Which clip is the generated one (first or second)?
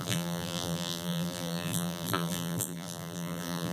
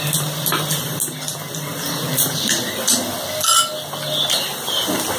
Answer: first